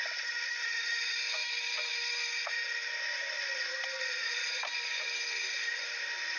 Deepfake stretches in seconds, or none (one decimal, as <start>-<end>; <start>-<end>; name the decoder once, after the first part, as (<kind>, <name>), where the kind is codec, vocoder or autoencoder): none